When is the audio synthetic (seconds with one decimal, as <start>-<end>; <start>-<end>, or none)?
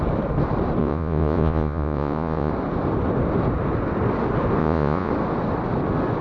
0.8-2.5; 4.6-5.1